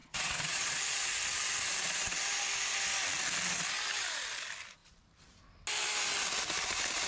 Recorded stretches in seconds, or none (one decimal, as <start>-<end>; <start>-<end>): 1.1-7.1